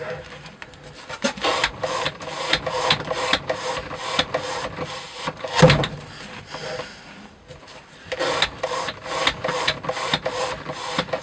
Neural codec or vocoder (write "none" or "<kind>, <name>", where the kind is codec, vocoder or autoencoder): none